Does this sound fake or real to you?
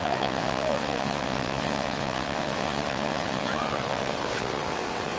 fake